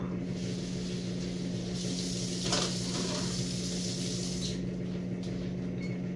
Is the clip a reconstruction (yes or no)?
no